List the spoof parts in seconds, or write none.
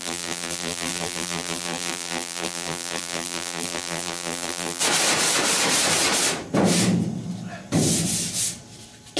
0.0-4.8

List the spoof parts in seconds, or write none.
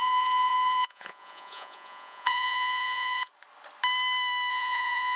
0.0-3.3; 4.5-5.2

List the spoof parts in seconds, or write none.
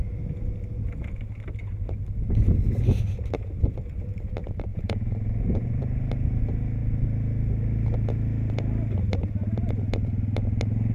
4.7-5.8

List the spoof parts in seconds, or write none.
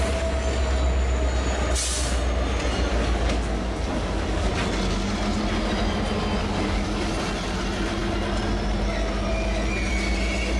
2.9-4.5; 6.4-7.1